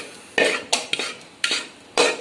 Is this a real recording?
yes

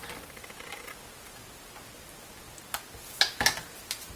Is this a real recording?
yes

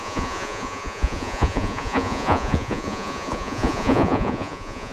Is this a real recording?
no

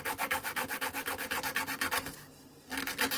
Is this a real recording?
yes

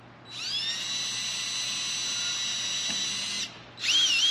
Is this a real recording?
yes